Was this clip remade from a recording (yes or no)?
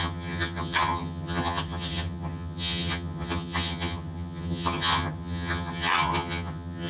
yes